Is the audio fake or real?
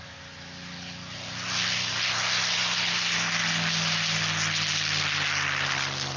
real